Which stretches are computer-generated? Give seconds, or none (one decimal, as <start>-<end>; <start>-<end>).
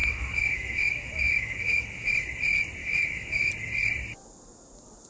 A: 0.0-2.2; 2.8-3.5